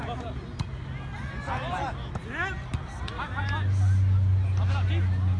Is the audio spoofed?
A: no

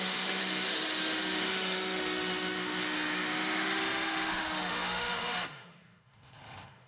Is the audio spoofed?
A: yes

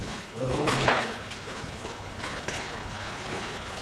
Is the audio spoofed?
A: yes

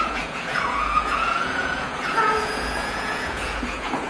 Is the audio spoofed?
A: yes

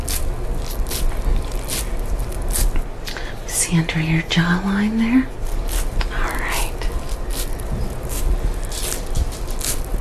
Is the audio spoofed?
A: no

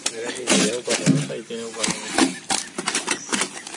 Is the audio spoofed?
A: no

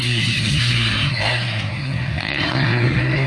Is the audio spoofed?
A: yes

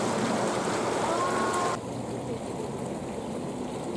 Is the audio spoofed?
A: no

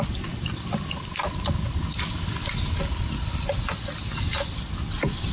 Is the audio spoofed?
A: no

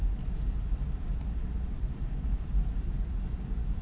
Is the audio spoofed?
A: no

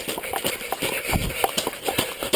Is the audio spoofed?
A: yes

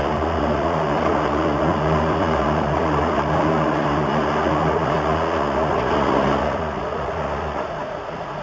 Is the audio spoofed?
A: yes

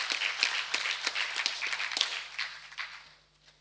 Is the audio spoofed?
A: no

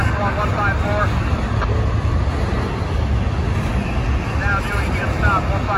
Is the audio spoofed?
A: no